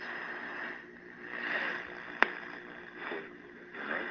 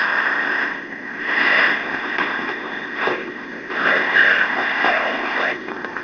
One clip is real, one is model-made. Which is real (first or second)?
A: first